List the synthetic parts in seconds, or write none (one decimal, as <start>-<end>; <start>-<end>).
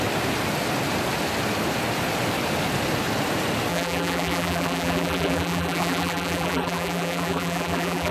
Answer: 3.7-8.1